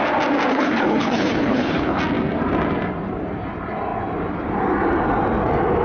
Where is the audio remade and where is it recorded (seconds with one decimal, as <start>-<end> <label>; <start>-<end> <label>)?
0.0-0.5 recorded; 0.5-2.0 remade; 2.0-5.8 recorded